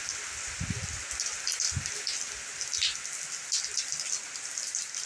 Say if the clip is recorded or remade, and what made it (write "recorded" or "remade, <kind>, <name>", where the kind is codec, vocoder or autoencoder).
recorded